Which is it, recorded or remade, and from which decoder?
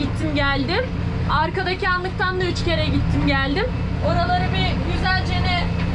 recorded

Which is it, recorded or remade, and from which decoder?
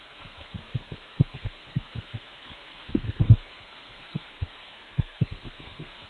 remade, codec, SNAC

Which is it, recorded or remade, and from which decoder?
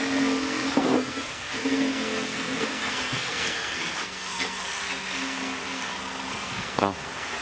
remade, codec, SNAC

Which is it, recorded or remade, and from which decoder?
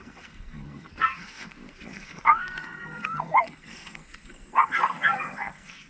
remade, codec, SNAC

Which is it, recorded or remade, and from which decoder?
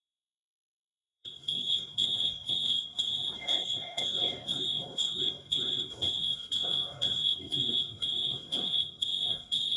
remade, codec, SNAC